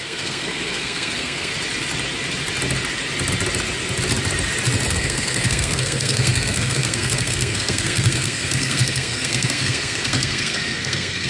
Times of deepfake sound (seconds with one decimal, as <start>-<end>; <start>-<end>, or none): 0.0-1.5; 4.9-11.3